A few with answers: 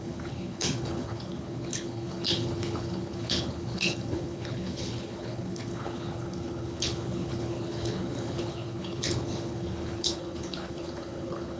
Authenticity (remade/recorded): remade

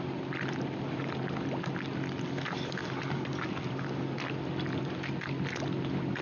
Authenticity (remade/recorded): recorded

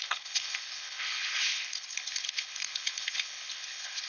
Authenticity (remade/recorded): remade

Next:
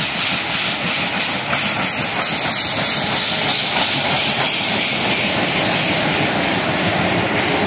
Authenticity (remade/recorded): recorded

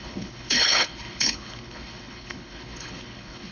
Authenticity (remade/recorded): remade